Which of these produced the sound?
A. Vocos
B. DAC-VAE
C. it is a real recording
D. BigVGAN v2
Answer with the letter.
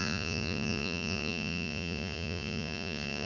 A